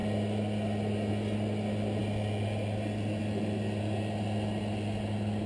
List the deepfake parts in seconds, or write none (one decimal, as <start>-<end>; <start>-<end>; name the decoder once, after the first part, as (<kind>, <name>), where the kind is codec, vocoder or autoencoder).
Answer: none